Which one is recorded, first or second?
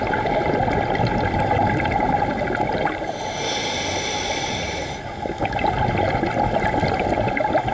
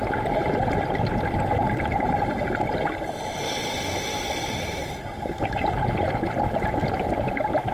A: first